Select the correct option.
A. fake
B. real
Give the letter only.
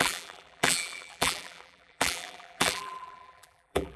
A